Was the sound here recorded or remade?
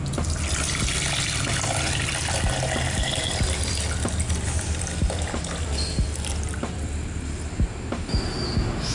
recorded